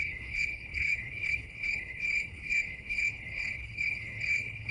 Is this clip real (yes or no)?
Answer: no